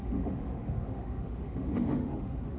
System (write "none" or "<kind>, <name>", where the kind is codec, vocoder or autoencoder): autoencoder, DAC-VAE